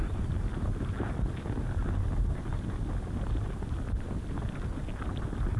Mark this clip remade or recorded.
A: recorded